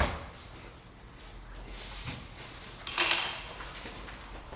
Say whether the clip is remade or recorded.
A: recorded